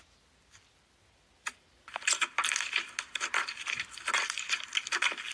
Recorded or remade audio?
recorded